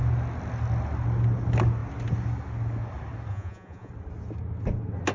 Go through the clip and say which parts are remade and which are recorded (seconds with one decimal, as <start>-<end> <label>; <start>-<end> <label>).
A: 0.0-3.3 recorded; 3.3-3.9 remade; 3.9-5.1 recorded